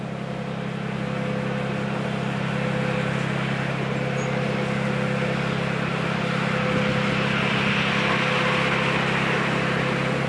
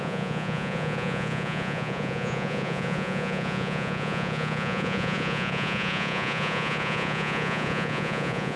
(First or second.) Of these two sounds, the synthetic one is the second